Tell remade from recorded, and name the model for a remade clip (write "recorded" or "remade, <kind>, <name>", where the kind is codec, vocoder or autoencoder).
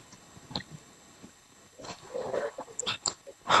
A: remade, codec, HILCodec